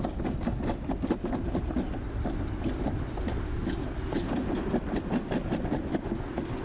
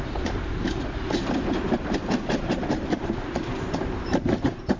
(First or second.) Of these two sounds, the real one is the first